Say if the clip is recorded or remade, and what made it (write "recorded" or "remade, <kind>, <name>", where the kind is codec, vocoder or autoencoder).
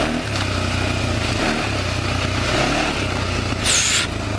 recorded